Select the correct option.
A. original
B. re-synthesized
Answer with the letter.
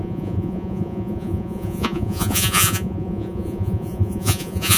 B